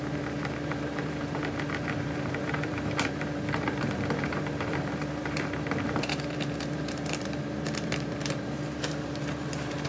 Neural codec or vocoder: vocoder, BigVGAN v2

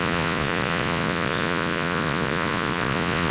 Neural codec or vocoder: vocoder, Vocos